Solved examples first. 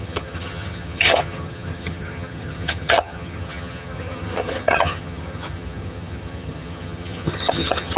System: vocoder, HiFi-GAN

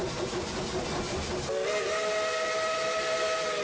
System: none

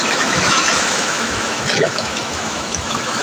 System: autoencoder, DAC-VAE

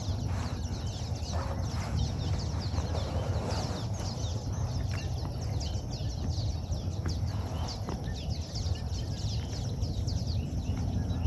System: none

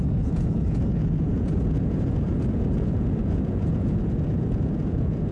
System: vocoder, Vocos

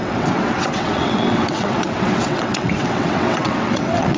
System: vocoder, WaveNeXt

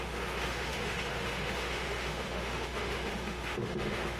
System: autoencoder, DAC-VAE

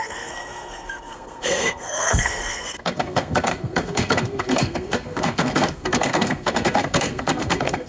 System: codec, SNAC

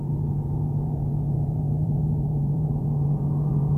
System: vocoder, Vocos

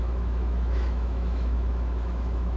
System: autoencoder, DAC-VAE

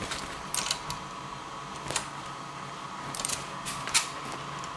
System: none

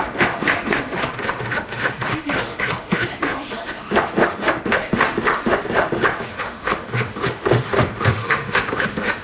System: autoencoder, DAC-VAE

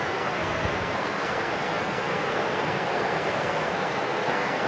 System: codec, SNAC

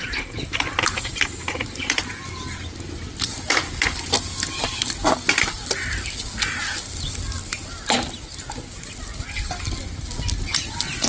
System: none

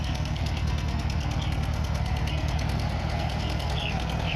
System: codec, SNAC